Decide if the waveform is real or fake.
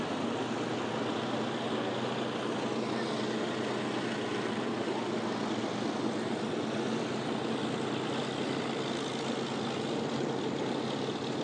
real